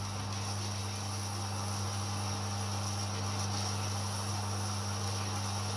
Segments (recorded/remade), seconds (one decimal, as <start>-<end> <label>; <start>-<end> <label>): 0.0-5.8 recorded

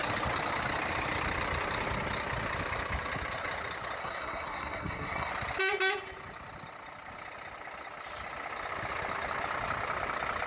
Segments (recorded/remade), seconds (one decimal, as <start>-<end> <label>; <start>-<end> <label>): 0.0-4.0 recorded; 4.0-5.3 remade; 5.3-10.5 recorded